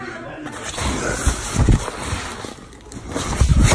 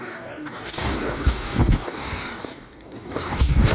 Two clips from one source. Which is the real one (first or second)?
first